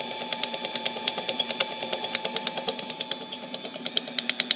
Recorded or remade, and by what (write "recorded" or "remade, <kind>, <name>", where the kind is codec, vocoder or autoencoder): recorded